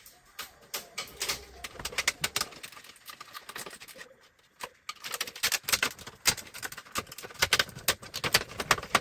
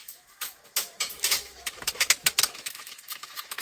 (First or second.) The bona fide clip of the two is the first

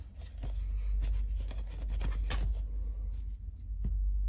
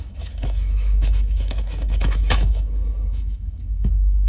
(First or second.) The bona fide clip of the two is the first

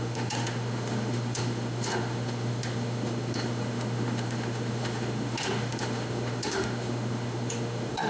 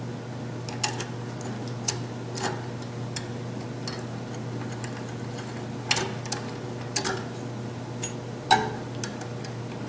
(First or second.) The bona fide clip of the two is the second